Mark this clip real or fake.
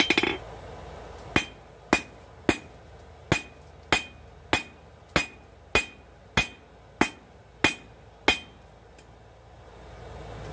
real